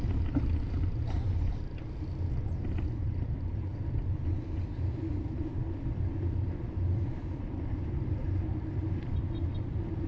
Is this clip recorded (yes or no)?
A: yes